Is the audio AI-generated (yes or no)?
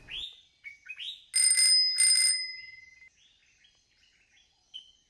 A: no